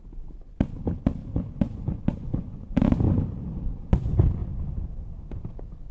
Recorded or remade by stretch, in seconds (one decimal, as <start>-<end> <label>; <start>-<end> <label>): 0.0-1.2 recorded; 1.2-2.9 remade; 2.9-5.9 recorded